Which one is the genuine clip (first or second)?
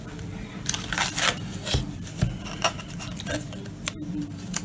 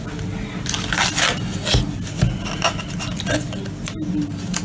second